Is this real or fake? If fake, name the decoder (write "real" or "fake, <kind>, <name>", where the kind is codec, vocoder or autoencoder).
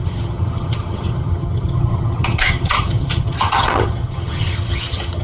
fake, vocoder, HiFi-GAN